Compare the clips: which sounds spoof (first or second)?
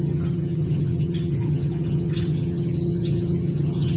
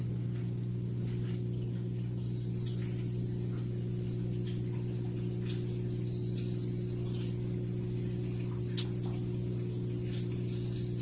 first